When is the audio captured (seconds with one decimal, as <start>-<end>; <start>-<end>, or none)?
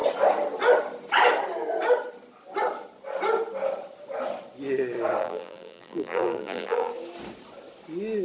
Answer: 0.0-5.2; 6.9-8.2